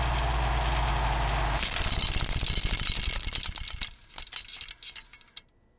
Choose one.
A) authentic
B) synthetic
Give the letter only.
A